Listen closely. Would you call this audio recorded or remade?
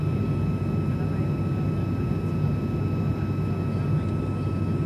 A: recorded